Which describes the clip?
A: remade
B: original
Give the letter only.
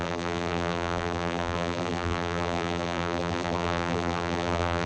A